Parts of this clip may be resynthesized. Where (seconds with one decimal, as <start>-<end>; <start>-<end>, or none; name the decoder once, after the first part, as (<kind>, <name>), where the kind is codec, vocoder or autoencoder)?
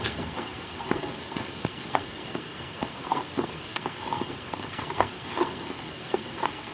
0.0-6.7 (codec, SNAC)